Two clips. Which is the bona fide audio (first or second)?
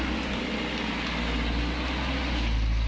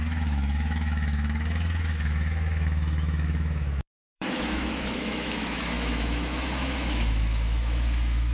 first